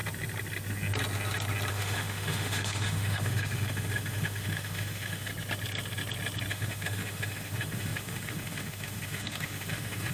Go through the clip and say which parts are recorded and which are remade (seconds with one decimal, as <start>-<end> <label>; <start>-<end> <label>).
0.0-1.7 recorded; 1.7-5.3 remade; 5.3-6.5 recorded; 6.5-10.1 remade